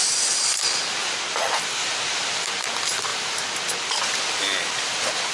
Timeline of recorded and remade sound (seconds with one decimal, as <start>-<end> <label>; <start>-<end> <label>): 0.0-5.3 recorded